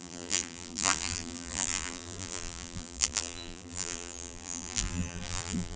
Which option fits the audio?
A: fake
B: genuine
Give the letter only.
A